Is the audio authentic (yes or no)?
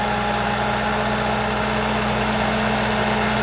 yes